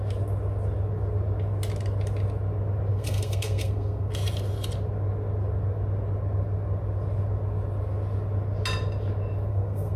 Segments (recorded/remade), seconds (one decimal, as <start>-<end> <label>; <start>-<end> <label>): 0.0-2.9 recorded; 2.9-4.1 remade; 4.1-9.5 recorded; 9.5-10.0 remade